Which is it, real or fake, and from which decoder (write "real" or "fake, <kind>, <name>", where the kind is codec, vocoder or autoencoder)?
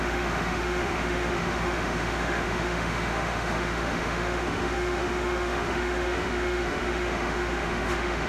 fake, autoencoder, DAC-VAE